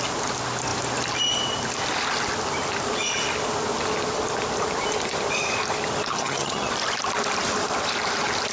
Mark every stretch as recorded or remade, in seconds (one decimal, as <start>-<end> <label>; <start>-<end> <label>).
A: 0.0-6.1 recorded; 6.1-6.7 remade; 6.7-8.5 recorded